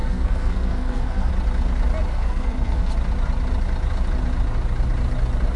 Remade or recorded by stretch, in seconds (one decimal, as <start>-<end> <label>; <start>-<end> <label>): 0.0-1.3 remade; 1.3-2.1 recorded; 2.1-2.9 remade; 2.9-5.6 recorded